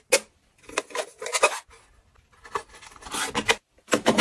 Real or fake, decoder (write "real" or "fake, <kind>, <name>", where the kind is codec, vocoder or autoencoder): real